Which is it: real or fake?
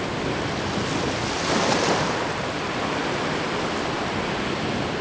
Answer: real